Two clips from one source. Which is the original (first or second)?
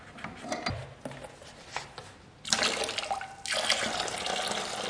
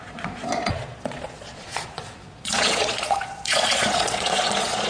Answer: first